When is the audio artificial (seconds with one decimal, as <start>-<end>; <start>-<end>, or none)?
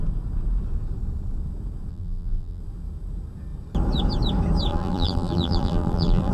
1.9-2.6; 4.7-6.3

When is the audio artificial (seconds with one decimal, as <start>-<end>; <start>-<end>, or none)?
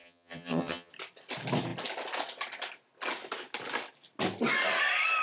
0.0-0.9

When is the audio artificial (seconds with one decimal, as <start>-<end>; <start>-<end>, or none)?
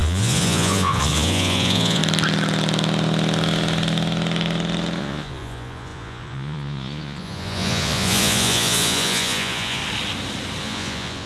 0.0-2.0; 5.0-9.8; 10.6-11.3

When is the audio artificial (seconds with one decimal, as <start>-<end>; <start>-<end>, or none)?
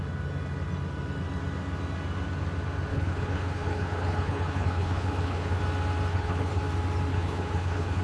2.9-5.6; 6.1-6.6; 7.1-8.0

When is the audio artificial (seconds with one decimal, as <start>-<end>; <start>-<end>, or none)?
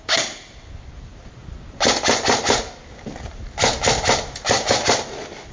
none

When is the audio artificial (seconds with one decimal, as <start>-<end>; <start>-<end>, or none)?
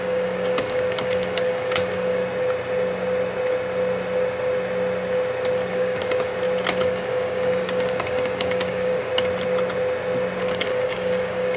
0.0-2.2; 5.7-6.3; 6.8-9.1; 10.4-11.6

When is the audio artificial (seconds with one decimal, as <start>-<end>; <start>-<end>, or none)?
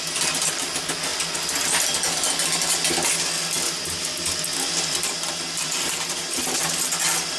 none